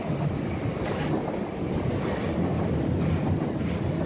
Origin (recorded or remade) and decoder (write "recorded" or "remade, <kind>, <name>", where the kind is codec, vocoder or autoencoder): recorded